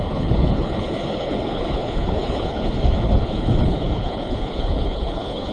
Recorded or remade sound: remade